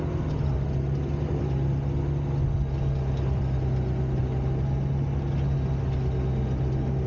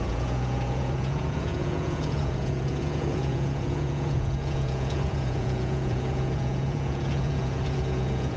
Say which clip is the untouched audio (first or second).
first